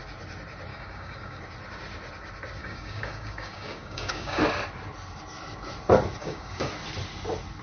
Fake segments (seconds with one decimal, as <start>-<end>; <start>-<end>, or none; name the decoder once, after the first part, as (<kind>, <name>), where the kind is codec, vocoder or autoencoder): 0.7-1.4 (codec, DAC); 2.6-4.4; 6.2-6.7